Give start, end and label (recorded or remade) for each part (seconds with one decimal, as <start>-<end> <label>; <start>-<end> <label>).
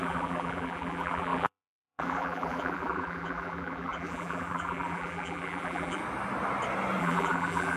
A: 0.0-6.0 remade; 6.0-7.0 recorded; 7.0-7.8 remade